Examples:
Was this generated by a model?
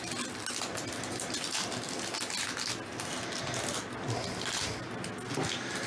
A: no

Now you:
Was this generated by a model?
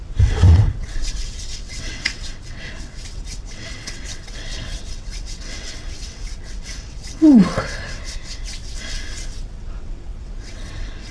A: yes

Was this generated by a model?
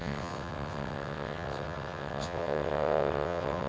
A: yes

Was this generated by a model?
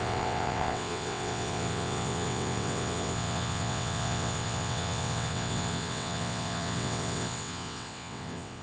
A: yes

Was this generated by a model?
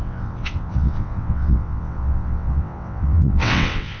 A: yes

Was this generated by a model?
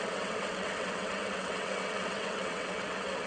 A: yes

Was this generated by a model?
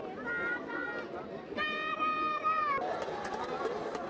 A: no